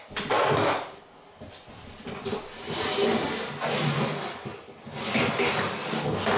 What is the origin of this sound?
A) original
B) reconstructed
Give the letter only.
A